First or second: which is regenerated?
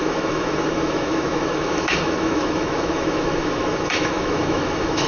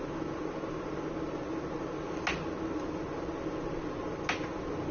first